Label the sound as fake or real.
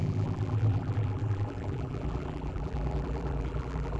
fake